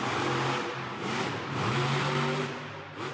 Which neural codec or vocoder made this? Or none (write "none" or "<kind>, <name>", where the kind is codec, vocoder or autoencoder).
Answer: none